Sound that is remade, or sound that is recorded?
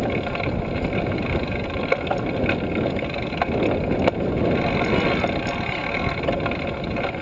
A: recorded